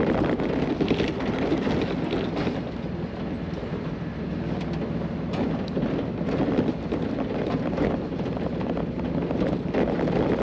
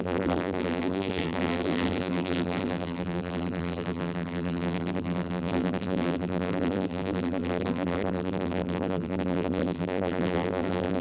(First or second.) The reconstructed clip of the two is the second